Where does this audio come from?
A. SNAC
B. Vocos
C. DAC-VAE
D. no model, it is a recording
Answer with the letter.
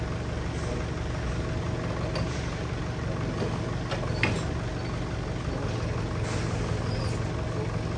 D